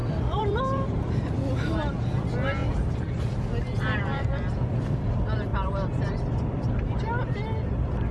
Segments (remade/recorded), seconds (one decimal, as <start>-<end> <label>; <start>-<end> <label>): 0.0-1.1 remade; 1.1-2.6 recorded; 2.6-5.1 remade; 5.1-8.1 recorded